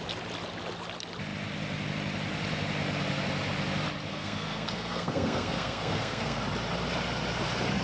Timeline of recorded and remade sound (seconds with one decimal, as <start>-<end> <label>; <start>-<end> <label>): 0.0-4.1 recorded; 4.1-6.4 remade; 6.4-7.8 recorded